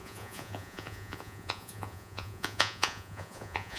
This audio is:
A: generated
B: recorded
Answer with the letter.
A